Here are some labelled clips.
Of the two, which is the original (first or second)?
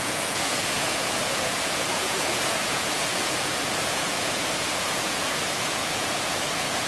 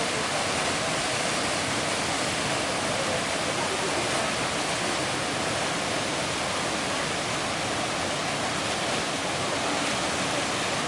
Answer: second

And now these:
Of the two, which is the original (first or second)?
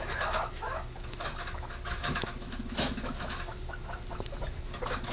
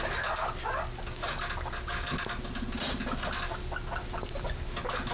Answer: second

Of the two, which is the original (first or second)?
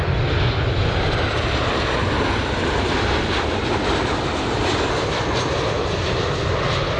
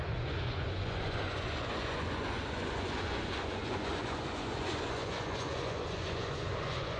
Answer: first